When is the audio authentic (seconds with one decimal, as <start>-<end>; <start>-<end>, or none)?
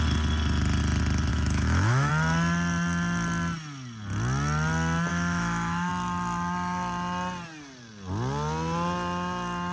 0.0-1.3; 2.1-5.1; 5.9-9.7